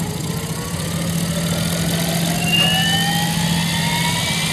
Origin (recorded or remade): recorded